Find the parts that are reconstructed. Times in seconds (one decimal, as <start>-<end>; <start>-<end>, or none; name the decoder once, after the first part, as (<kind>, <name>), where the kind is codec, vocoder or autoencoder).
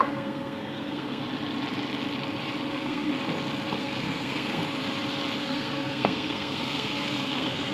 0.0-1.2 (codec, SNAC); 2.7-3.1; 3.8-4.6; 5.4-7.7